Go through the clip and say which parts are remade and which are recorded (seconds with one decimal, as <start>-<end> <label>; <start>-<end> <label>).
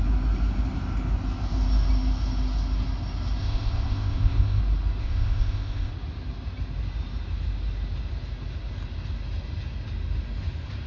0.0-3.4 recorded; 3.4-4.6 remade; 4.6-5.0 recorded; 5.0-5.9 remade; 5.9-10.9 recorded